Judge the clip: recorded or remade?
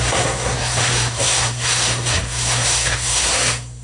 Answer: remade